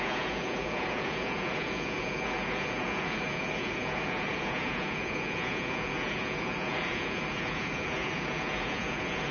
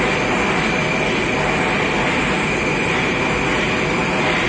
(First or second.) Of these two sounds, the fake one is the first